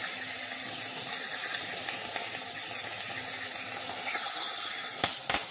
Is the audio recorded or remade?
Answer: recorded